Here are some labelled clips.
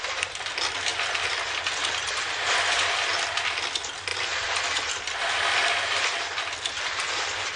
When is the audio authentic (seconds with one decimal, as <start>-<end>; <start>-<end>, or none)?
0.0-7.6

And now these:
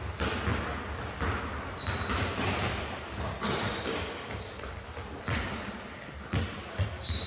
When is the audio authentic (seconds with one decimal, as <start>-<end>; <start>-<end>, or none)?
0.0-7.3

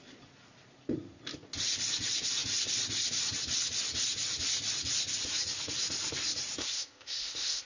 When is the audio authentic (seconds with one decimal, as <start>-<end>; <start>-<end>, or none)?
0.0-6.6

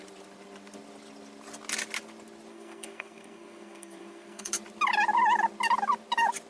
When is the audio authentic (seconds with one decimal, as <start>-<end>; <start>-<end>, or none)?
0.0-2.5; 4.5-6.5

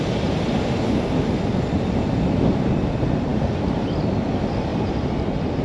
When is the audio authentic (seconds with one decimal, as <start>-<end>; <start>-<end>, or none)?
0.0-4.7